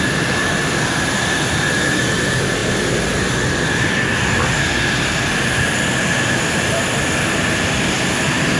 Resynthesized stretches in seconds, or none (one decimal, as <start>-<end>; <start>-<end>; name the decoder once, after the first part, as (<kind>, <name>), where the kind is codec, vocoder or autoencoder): none